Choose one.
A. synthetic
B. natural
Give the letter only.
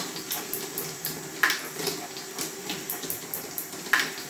B